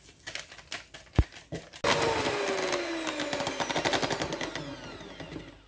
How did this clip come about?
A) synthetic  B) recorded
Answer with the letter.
B